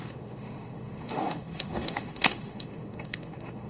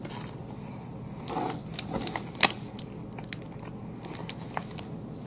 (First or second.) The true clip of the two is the second